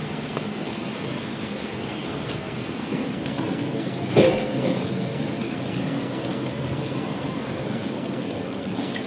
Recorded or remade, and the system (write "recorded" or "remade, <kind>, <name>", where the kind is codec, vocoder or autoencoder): remade, codec, SNAC